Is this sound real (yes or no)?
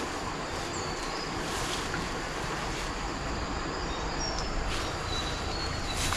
no